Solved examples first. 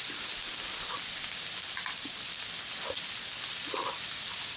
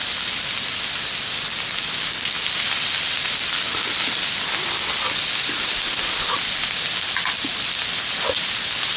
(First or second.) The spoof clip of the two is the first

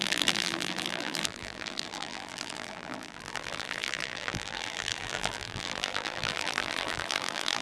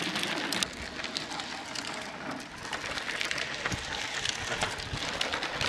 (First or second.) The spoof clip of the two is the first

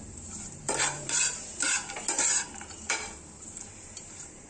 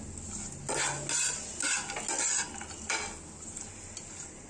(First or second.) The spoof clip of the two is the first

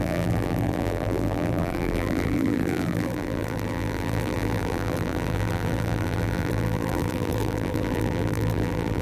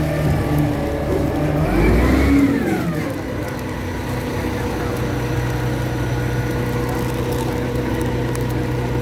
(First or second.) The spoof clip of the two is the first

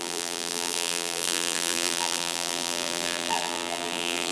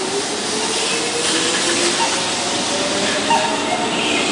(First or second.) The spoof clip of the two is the first